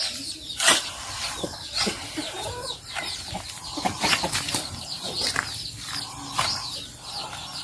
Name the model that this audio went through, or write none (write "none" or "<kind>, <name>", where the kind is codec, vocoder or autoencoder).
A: none